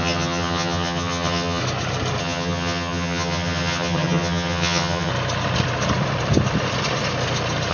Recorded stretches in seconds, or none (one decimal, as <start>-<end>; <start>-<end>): 1.6-2.2; 5.1-7.7